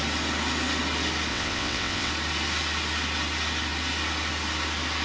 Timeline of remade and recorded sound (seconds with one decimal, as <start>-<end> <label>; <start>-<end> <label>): 0.0-1.3 recorded; 1.3-2.1 remade; 2.1-5.0 recorded